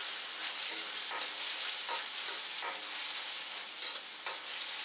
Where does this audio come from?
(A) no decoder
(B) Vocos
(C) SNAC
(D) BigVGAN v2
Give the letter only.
A